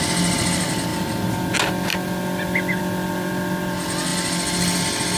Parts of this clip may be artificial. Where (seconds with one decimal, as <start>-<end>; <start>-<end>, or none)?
none